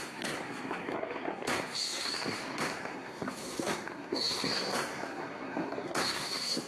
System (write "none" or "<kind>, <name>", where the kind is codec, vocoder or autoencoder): codec, SNAC